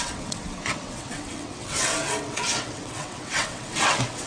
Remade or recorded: remade